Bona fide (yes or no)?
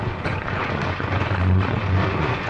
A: no